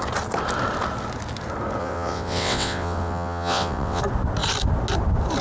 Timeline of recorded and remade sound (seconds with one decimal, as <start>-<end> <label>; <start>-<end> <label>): 0.0-1.8 recorded; 1.8-4.0 remade; 4.0-5.4 recorded